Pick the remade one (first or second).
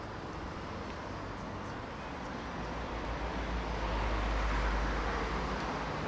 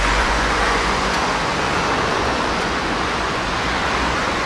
second